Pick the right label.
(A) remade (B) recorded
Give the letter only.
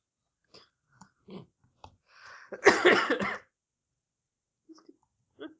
B